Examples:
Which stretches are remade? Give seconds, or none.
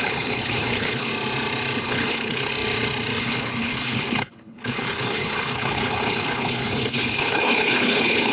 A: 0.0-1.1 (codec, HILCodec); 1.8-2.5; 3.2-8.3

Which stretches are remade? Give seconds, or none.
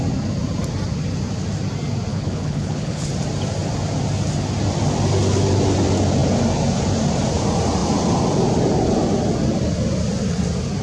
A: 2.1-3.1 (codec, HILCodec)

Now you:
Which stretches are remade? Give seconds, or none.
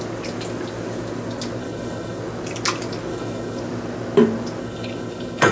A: 1.6-2.2 (codec, HILCodec); 3.1-3.6; 4.6-5.5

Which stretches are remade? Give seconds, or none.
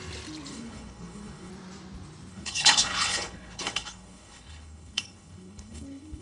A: 0.5-1.5 (codec, HILCodec); 2.3-6.2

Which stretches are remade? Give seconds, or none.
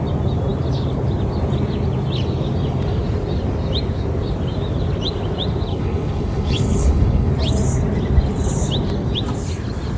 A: 5.7-7.3 (codec, HILCodec)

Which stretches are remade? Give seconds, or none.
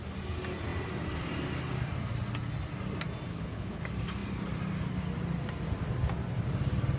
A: 3.3-3.8 (codec, HILCodec)